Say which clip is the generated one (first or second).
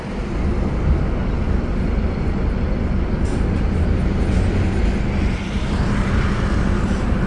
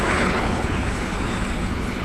second